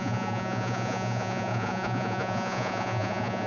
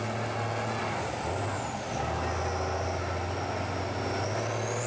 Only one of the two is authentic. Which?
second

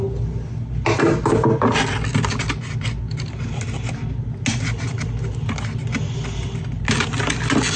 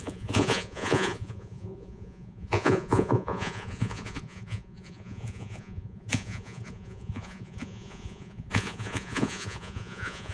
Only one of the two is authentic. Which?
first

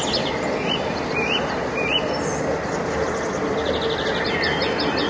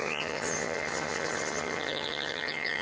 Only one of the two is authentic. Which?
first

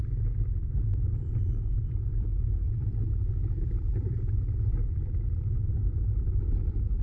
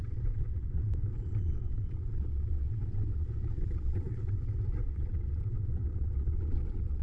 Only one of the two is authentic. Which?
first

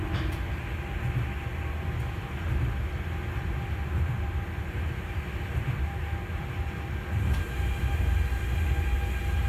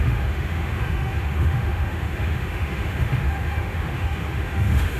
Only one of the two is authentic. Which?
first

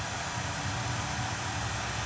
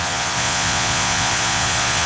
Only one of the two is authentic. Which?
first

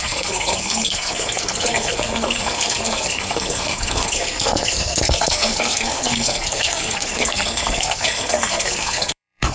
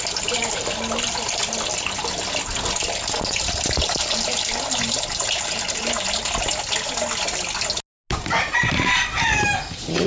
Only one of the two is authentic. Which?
second